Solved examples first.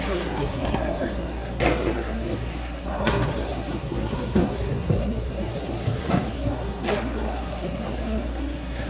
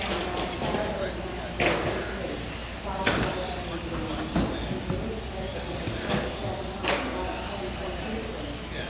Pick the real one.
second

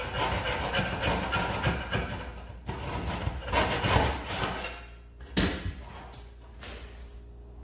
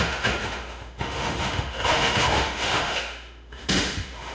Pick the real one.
first